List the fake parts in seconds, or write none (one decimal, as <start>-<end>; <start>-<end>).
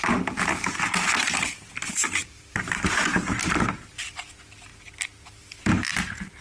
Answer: 2.0-2.9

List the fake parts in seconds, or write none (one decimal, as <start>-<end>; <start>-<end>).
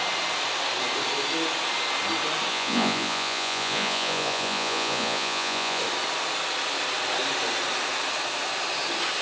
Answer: 2.5-5.8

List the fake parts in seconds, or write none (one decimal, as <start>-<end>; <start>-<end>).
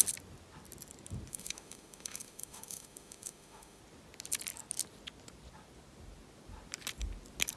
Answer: 1.3-3.8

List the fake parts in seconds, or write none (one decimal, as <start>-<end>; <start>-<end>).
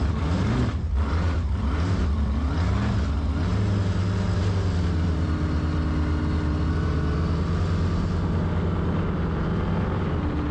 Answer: none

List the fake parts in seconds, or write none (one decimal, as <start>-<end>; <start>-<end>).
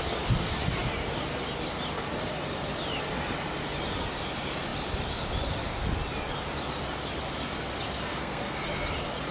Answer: 8.1-8.6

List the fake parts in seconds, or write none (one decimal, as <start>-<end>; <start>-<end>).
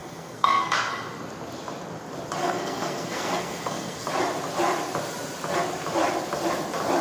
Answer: 0.0-0.9; 2.4-4.1